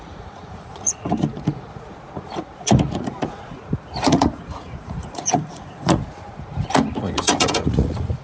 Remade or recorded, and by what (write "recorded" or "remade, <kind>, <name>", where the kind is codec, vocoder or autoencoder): remade, vocoder, Vocos